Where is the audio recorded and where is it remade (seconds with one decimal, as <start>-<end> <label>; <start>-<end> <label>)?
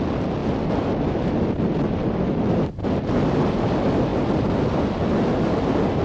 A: 0.0-6.0 recorded